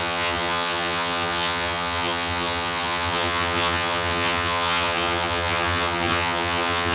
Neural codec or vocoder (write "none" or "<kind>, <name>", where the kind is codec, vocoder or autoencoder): vocoder, HiFi-GAN